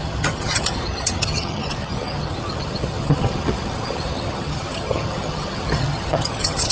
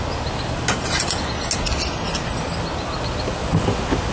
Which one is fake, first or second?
first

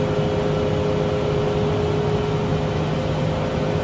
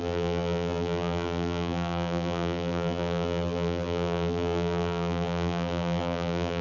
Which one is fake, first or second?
second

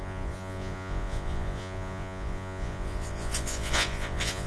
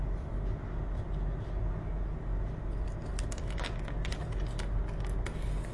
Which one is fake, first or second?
first